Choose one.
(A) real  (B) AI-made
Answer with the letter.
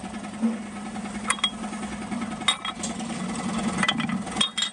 A